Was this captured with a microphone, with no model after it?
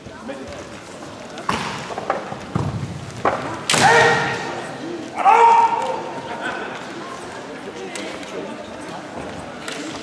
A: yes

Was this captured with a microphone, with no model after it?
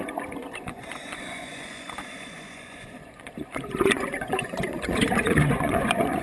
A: no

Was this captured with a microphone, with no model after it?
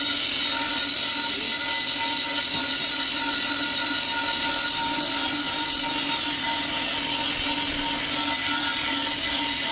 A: yes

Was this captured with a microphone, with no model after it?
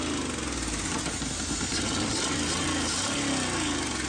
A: yes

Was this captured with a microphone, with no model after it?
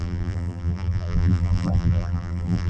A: no